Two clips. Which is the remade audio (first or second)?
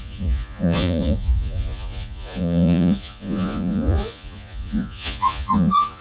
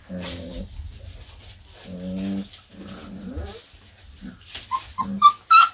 first